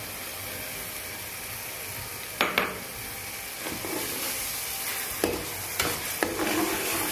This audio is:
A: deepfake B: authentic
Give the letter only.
B